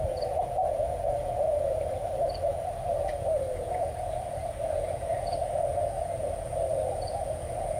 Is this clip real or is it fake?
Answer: fake